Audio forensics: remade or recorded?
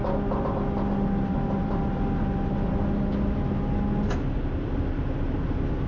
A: recorded